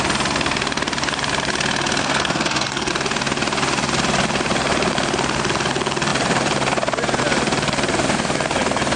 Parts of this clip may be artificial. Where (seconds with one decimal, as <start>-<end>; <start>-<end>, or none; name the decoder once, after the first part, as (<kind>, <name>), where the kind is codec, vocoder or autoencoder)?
2.0-2.9 (codec, SNAC)